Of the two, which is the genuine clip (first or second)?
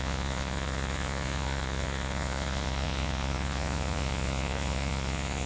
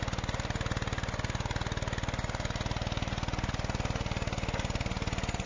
second